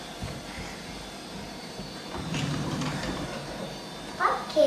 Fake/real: fake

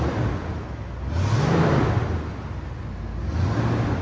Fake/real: real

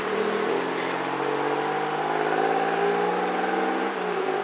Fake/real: real